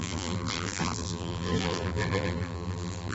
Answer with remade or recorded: remade